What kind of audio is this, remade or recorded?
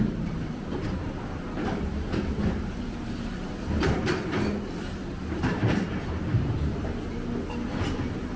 remade